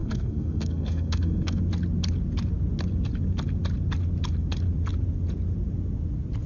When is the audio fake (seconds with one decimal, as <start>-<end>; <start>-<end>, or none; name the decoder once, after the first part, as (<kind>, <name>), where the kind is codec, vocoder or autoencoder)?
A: 0.0-1.6 (codec, SNAC)